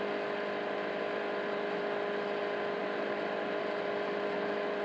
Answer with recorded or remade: recorded